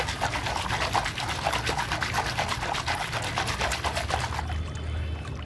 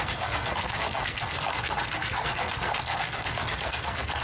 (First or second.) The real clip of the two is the first